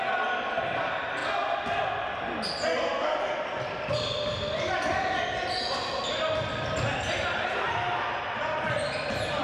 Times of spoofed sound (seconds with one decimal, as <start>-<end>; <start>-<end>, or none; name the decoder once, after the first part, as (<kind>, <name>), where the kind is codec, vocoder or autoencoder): none